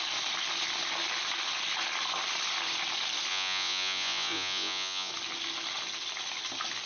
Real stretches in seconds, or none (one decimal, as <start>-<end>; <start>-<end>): 0.0-3.3; 5.1-6.9